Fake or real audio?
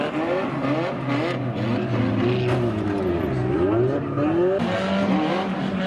real